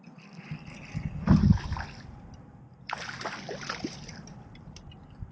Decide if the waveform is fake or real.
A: real